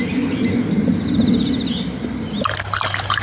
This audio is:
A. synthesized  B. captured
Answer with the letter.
B